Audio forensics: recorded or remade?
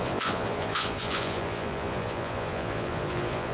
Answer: remade